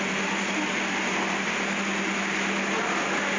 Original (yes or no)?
yes